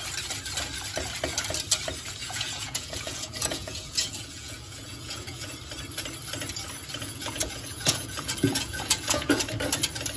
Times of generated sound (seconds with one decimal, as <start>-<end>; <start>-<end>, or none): 2.2-5.5; 7.0-9.4